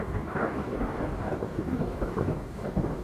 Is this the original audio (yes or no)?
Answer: no